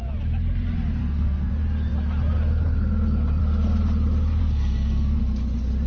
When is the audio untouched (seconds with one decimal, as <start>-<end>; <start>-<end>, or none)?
0.0-1.0; 1.5-4.4; 5.2-5.9